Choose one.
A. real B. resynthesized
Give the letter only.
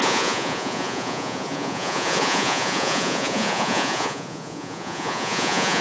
B